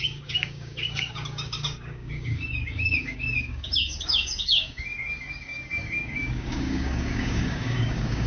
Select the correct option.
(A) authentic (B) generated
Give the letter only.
B